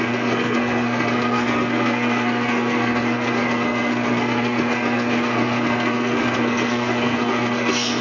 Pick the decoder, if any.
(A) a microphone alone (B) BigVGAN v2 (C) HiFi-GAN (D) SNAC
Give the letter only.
D